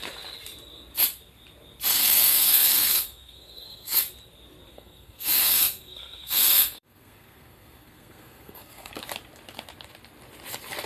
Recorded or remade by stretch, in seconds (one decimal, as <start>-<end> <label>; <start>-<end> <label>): 0.0-1.9 recorded; 1.9-4.0 remade; 4.0-4.7 recorded; 4.7-8.9 remade; 8.9-10.9 recorded